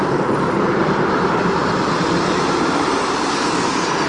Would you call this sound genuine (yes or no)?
no